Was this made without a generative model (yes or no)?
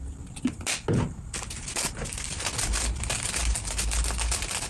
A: yes